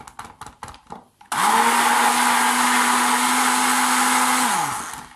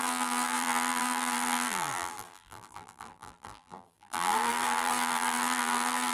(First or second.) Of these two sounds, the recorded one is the first